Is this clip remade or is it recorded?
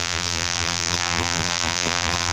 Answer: remade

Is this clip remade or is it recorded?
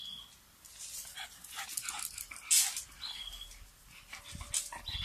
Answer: recorded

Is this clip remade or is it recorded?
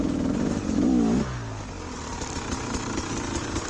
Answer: recorded